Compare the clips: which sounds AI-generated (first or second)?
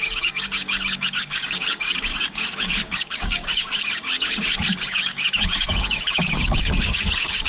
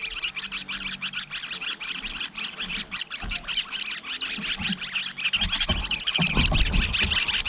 first